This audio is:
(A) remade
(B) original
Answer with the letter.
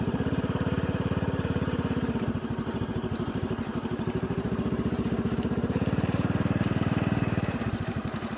A